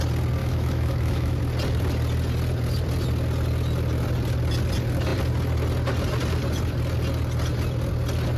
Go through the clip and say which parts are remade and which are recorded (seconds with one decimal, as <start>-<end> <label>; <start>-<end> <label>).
0.0-0.4 recorded; 0.4-1.4 remade; 1.4-8.4 recorded